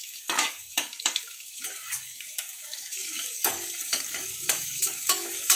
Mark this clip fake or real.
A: fake